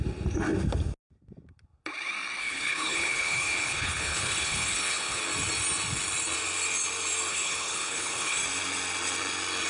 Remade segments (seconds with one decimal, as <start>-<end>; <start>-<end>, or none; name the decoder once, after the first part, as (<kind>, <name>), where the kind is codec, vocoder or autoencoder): 2.4-5.2 (codec, HILCodec); 7.3-8.4